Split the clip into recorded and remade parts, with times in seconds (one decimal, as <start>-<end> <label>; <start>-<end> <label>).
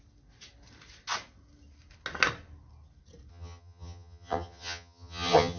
0.0-3.3 recorded; 3.3-5.6 remade